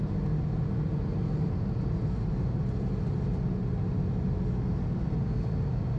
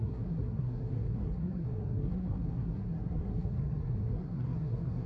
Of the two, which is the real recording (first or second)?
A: first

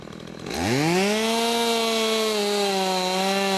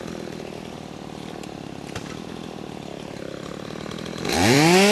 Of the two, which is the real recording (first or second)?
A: first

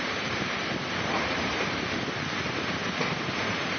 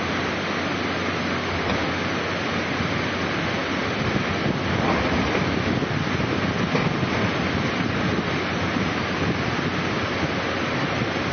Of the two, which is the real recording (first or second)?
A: second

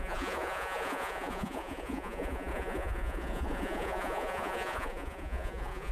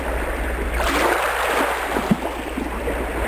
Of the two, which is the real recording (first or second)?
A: second